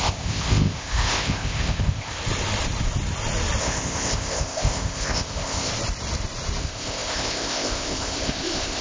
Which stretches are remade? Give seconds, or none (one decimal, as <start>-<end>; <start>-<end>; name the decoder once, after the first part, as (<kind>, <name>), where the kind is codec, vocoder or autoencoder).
0.0-2.2 (codec, ZipCodec); 3.6-5.7; 6.6-8.8